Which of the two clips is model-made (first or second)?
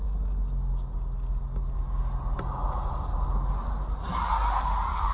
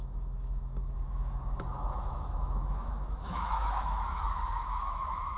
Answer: second